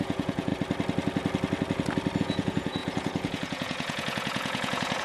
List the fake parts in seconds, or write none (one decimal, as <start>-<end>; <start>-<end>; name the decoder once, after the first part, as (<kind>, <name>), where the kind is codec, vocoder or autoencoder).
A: 0.0-0.5 (vocoder, Vocos); 2.2-5.0